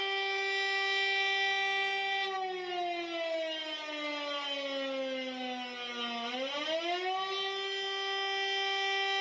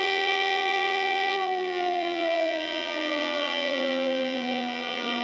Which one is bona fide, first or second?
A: first